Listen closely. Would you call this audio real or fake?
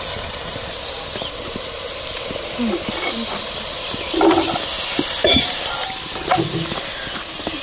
real